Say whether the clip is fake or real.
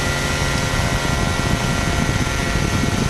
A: real